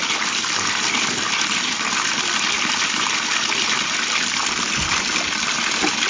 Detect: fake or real real